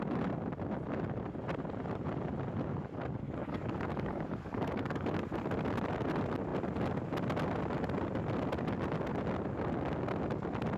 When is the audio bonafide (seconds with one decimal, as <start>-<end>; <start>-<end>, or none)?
0.0-3.4; 5.2-10.8